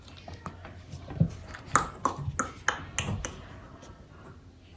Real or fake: real